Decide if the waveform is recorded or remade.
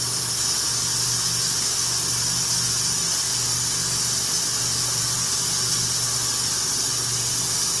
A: recorded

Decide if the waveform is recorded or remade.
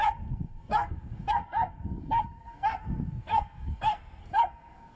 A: remade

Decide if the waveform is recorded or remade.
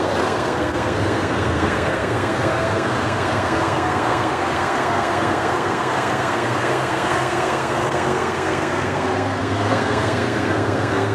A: remade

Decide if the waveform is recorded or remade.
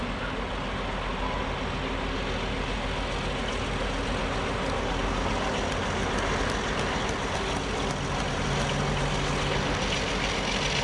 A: recorded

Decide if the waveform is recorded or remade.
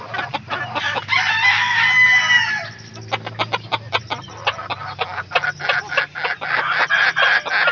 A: recorded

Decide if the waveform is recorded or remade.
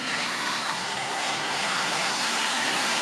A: remade